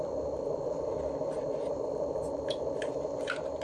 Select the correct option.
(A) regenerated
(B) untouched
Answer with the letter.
B